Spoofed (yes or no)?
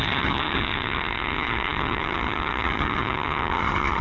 yes